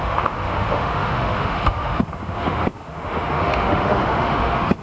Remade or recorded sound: remade